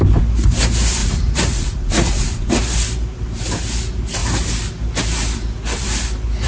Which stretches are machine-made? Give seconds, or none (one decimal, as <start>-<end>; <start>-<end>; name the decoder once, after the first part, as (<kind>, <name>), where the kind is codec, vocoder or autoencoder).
1.0-2.5 (vocoder, Vocos)